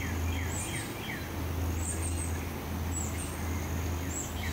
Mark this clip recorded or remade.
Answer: recorded